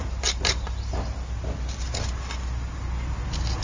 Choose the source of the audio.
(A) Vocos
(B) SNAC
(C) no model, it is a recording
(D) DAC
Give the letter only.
C